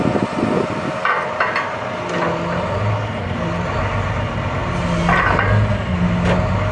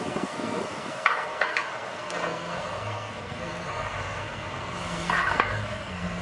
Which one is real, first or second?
first